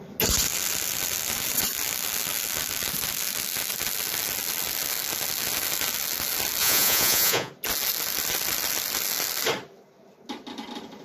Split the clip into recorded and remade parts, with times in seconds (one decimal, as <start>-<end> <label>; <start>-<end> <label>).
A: 0.0-6.6 recorded; 6.6-7.5 remade; 7.5-11.0 recorded